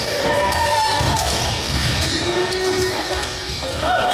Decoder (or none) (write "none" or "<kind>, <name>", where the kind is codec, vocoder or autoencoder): codec, DAC